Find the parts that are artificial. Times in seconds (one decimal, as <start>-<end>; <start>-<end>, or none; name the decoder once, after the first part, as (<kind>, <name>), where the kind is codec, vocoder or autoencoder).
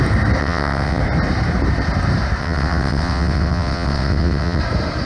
0.4-1.0 (vocoder, WaveNeXt); 2.4-4.6